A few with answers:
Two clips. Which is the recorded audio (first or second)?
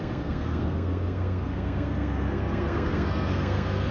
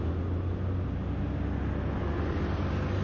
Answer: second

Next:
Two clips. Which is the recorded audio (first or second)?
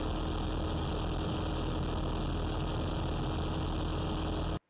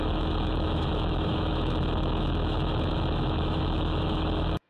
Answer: first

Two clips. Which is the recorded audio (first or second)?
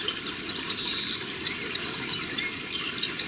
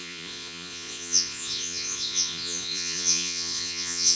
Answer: first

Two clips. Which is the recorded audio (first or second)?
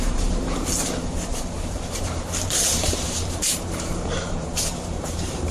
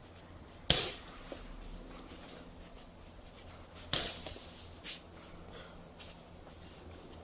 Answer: second